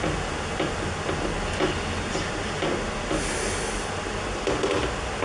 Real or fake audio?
real